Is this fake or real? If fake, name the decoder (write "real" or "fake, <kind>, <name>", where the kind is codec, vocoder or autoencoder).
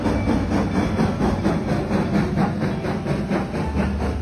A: real